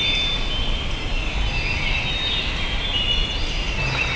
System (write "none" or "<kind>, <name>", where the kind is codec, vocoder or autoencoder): none